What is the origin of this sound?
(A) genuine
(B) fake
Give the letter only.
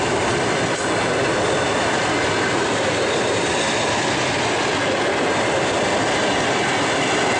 A